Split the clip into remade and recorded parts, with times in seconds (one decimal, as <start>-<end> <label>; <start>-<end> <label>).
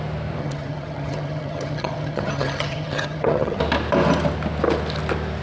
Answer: 0.0-0.4 recorded; 0.4-3.6 remade; 3.6-5.4 recorded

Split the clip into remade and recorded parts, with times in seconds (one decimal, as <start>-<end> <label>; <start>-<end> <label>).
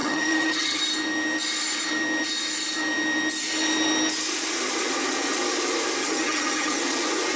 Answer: 0.0-0.8 remade; 0.8-6.0 recorded; 6.0-6.8 remade; 6.8-7.4 recorded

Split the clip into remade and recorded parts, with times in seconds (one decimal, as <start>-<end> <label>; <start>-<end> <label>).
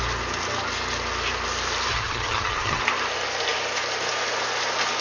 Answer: 0.0-1.9 recorded; 1.9-2.8 remade; 2.8-5.0 recorded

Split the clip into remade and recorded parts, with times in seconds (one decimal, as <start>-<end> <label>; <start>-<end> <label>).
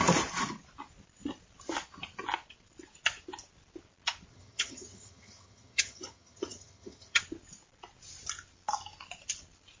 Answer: 0.0-4.3 recorded; 4.3-7.2 remade; 7.2-9.8 recorded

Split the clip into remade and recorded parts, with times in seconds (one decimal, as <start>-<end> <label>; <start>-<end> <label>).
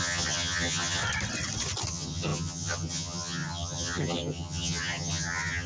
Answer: 0.0-1.0 remade; 1.0-1.9 recorded; 1.9-5.7 remade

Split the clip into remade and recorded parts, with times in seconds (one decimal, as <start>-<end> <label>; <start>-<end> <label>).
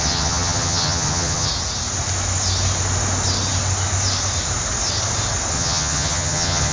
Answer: 0.0-1.5 remade; 1.5-5.5 recorded; 5.5-6.7 remade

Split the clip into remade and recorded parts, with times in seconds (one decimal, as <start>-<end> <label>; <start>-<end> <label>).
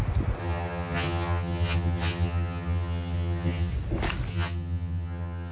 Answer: 0.0-0.4 recorded; 0.4-3.7 remade; 3.7-4.3 recorded; 4.3-5.5 remade